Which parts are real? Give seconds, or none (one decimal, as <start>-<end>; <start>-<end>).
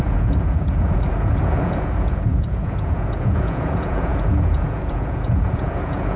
none